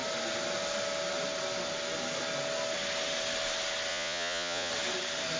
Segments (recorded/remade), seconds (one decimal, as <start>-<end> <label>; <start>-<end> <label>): 0.0-3.9 recorded; 3.9-4.7 remade; 4.7-5.4 recorded